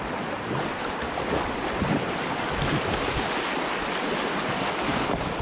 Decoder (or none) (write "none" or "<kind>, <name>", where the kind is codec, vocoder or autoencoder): none